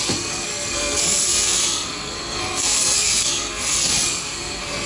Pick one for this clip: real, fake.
fake